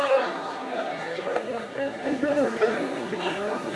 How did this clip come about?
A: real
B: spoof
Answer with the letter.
B